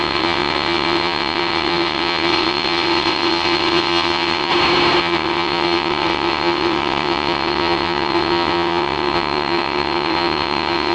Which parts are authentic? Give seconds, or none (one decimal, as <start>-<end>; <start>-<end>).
4.5-5.0

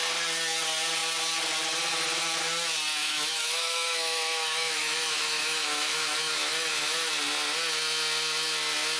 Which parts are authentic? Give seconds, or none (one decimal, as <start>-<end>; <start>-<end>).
0.0-3.0; 7.1-9.0

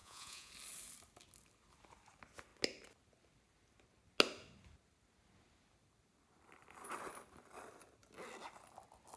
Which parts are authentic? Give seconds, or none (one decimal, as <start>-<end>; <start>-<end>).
0.5-9.2

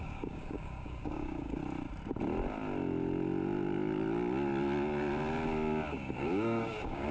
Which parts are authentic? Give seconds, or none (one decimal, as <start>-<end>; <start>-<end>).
1.6-5.9

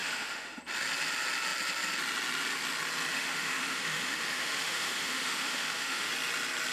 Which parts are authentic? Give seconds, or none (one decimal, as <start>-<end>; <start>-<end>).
0.6-3.1; 6.1-6.7

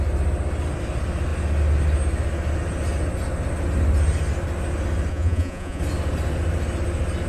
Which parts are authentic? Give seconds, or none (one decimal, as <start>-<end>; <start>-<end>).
0.0-5.1; 5.8-7.3

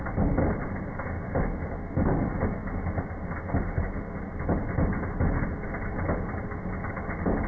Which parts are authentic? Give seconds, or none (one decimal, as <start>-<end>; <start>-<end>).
0.0-7.5

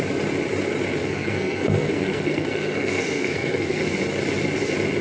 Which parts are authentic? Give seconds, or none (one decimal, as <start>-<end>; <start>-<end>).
0.0-1.0; 4.0-5.0